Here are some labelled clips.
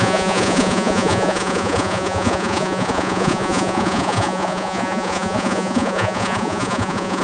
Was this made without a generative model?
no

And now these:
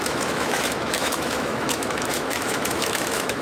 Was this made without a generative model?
no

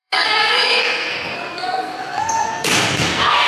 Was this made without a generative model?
no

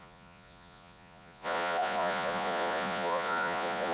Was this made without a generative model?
no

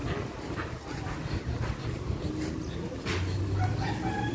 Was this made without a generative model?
yes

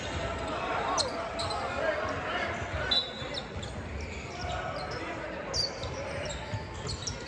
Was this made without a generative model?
yes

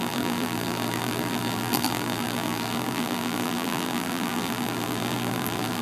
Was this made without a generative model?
no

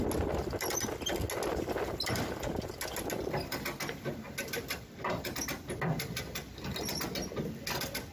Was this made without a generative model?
yes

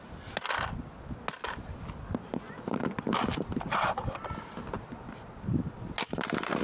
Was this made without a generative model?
yes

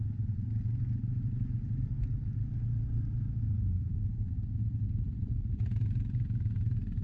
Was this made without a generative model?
no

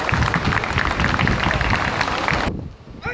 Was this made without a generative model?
yes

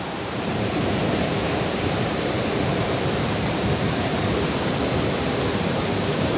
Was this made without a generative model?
no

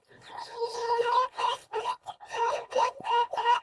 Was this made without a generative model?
no